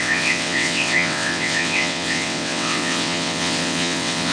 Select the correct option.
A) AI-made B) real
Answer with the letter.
A